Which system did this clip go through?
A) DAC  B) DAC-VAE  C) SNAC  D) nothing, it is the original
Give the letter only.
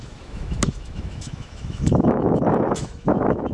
B